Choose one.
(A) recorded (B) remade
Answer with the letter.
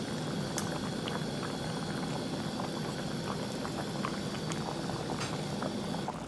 A